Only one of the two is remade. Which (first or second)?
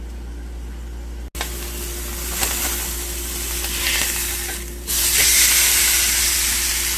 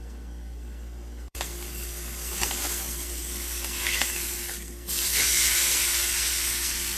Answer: second